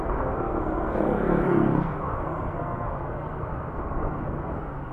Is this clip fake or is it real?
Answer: fake